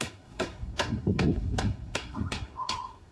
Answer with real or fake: fake